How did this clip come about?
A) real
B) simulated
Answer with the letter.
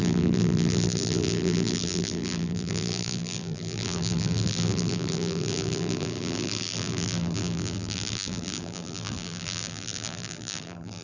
B